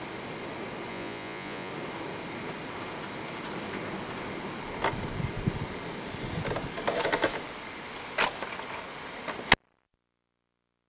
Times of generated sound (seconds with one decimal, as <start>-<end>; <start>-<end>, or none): 0.9-1.7